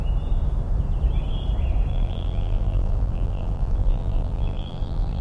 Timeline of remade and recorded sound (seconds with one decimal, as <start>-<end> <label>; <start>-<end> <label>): 0.0-1.9 recorded; 1.9-5.2 remade